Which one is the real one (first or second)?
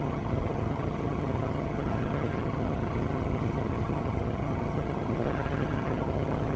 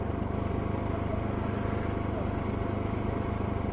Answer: second